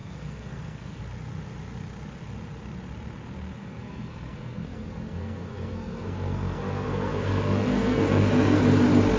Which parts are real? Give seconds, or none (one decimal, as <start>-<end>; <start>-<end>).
1.0-3.6; 8.6-9.2

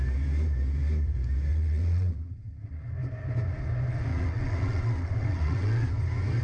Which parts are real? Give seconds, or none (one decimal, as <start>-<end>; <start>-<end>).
0.0-1.5; 2.9-4.1; 5.9-6.4

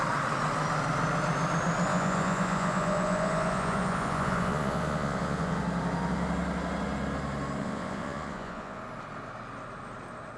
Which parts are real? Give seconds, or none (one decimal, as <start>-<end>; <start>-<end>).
0.0-1.9; 5.6-7.6; 8.8-10.4

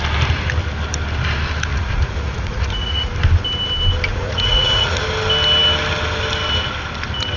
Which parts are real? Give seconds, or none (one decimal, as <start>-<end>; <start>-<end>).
0.0-1.7; 3.1-4.1; 5.0-7.4

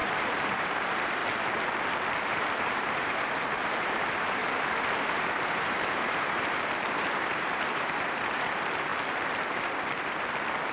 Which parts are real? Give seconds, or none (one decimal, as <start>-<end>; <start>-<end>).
1.2-2.2; 4.4-5.0; 8.9-10.7

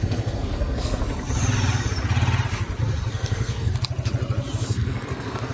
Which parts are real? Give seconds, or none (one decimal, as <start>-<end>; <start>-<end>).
1.0-3.1; 3.7-4.6

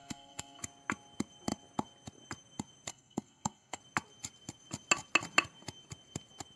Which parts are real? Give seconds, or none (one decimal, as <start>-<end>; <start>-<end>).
0.6-2.9; 3.8-6.6